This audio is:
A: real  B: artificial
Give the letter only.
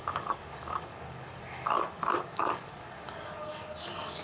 B